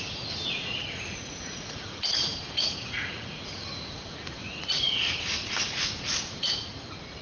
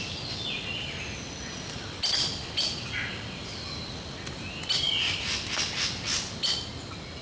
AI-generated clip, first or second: first